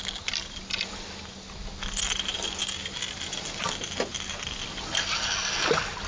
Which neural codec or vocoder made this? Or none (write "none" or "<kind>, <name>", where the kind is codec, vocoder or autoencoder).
none